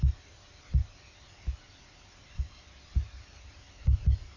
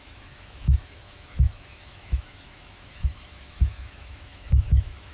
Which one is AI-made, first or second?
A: second